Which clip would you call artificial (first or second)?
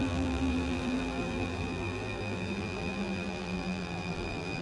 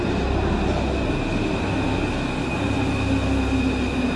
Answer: first